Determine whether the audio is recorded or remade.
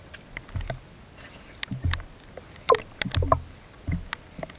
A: recorded